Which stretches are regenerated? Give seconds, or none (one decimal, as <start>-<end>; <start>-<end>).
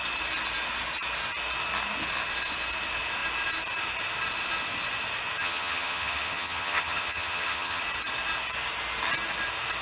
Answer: 5.4-7.8